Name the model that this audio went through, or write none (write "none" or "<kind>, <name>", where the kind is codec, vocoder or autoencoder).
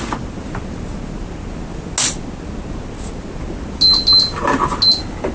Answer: none